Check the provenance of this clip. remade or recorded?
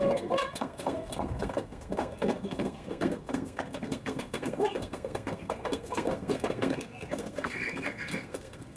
remade